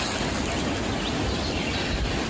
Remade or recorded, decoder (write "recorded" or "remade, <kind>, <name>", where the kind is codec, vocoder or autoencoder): recorded